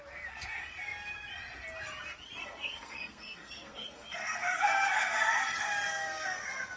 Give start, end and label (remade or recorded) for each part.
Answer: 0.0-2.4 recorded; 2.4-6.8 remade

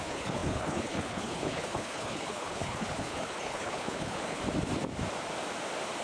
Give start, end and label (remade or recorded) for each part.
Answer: 0.0-4.4 remade; 4.4-6.0 recorded

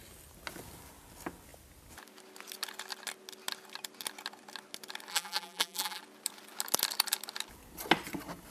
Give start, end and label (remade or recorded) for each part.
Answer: 0.0-5.1 recorded; 5.1-6.0 remade; 6.0-8.5 recorded

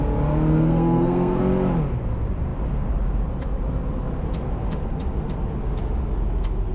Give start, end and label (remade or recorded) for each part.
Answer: 0.0-0.5 recorded; 0.5-1.4 remade; 1.4-6.7 recorded

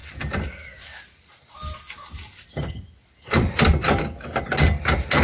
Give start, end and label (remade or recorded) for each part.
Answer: 0.0-3.8 recorded; 3.8-4.4 remade; 4.4-5.2 recorded